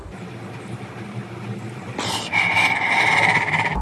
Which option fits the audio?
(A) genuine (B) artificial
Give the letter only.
B